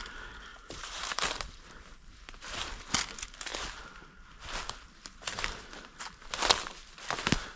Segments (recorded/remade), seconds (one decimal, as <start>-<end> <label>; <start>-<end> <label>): 0.0-0.5 recorded; 0.5-2.9 remade; 2.9-7.6 recorded